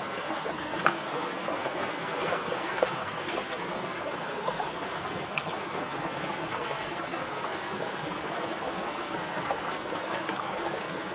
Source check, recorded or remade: remade